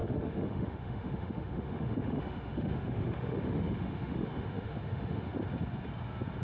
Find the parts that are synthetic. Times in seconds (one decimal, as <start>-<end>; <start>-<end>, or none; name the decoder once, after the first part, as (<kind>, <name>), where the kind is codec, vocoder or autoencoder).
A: 0.0-5.3 (autoencoder, DAC-VAE)